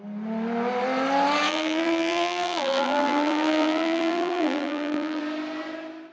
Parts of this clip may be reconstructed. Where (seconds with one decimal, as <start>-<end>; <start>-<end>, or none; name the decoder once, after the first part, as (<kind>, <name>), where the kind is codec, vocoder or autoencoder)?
1.5-5.2 (vocoder, BigVGAN v2)